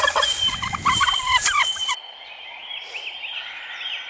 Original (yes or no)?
yes